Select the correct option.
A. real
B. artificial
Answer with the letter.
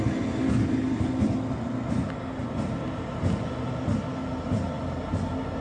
A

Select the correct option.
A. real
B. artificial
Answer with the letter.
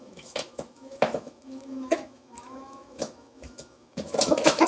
B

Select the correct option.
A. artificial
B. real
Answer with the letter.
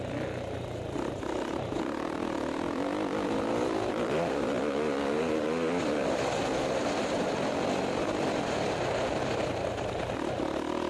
B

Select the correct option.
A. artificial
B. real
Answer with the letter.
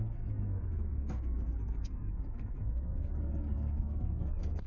A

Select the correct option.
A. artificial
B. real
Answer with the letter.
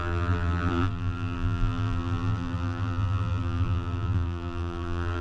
A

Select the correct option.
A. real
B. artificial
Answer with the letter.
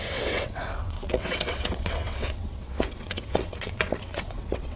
B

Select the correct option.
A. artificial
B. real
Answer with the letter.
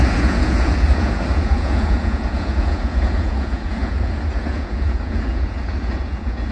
A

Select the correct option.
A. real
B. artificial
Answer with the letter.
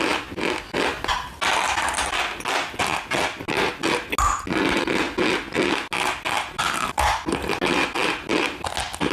A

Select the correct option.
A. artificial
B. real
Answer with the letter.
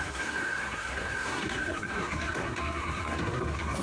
A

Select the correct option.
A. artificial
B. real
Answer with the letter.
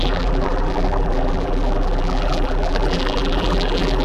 A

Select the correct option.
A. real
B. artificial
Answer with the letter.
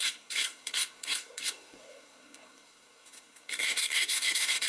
B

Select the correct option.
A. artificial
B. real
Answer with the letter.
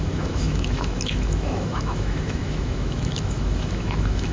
A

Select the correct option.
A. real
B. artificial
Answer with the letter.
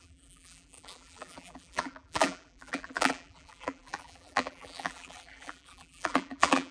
B